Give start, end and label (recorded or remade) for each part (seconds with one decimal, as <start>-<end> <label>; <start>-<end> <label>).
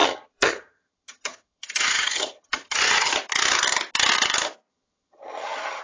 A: 0.0-3.1 remade; 3.1-4.7 recorded; 4.7-5.8 remade